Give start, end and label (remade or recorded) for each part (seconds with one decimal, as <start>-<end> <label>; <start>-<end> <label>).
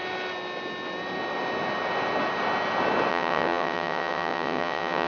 0.0-3.1 recorded; 3.1-5.1 remade